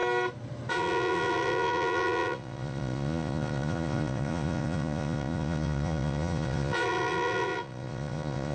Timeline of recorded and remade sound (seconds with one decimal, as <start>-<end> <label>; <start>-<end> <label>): 0.0-0.7 recorded; 0.7-8.5 remade